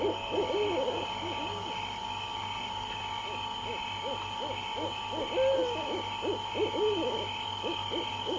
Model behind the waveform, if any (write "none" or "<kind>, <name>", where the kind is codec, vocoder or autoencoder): none